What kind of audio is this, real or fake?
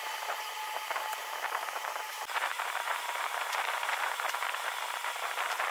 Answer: fake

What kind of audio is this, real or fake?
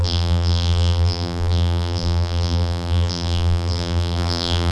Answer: fake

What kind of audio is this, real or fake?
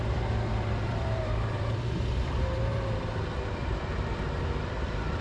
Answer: fake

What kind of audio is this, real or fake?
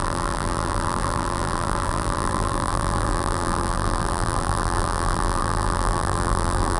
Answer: fake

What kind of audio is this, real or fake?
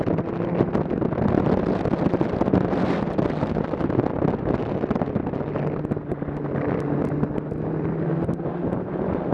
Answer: real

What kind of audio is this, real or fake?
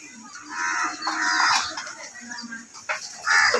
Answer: real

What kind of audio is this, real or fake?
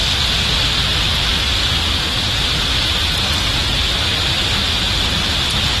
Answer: real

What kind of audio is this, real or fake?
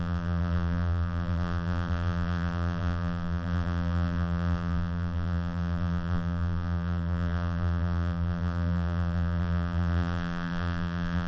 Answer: fake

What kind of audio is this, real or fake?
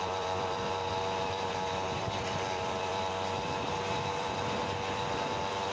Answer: fake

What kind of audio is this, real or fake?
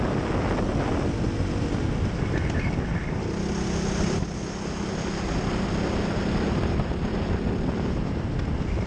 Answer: real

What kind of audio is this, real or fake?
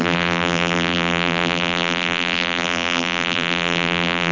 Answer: fake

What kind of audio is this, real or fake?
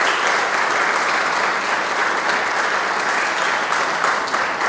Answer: real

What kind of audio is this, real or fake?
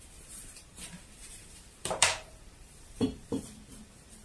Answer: fake